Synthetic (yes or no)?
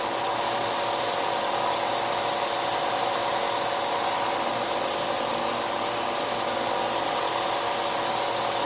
no